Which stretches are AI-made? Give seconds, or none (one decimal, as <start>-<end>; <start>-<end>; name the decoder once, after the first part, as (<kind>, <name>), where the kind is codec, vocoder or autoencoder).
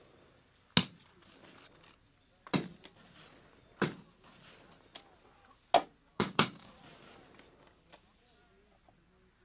6.1-6.7 (codec, DAC)